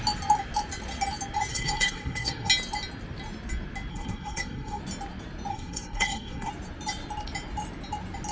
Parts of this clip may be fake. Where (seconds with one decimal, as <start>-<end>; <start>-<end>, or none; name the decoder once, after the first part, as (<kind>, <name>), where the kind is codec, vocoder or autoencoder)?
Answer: 1.5-2.5 (codec, SNAC); 3.9-4.8; 5.5-6.5